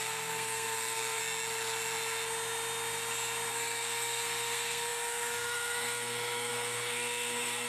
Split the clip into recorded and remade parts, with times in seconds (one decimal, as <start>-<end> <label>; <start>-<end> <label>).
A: 0.0-1.2 remade; 1.2-3.5 recorded; 3.5-7.7 remade